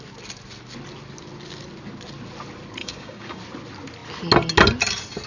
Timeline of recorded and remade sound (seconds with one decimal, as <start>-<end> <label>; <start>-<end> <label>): 0.0-2.8 recorded; 2.8-3.4 remade; 3.4-5.3 recorded